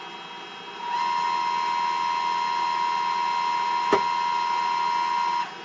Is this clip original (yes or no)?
yes